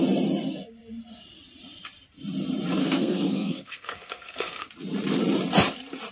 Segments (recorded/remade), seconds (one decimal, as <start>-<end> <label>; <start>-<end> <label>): 0.0-2.8 recorded; 2.8-4.7 remade; 4.7-6.1 recorded